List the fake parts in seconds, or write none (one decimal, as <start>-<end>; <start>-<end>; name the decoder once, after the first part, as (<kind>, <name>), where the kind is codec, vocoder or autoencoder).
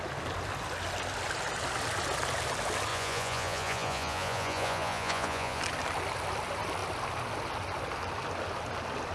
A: 2.9-5.6 (vocoder, Vocos)